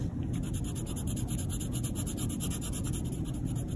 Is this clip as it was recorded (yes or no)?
yes